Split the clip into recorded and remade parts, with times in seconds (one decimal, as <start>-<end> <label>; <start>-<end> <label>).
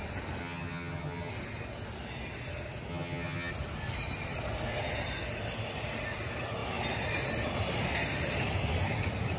0.0-0.4 recorded; 0.4-1.3 remade; 1.3-2.9 recorded; 2.9-3.5 remade; 3.5-9.4 recorded